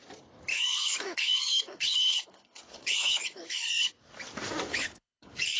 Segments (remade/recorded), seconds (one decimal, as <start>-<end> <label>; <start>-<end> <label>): 0.0-0.5 recorded; 0.5-3.9 remade; 3.9-4.7 recorded; 4.7-5.6 remade